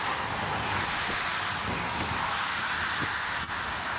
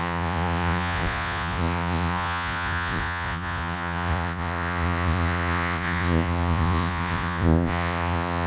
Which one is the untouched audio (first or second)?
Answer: first